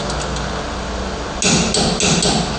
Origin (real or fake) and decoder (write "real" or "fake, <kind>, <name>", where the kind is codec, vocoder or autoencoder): real